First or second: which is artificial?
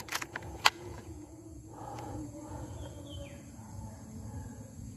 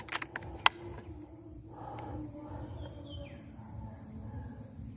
first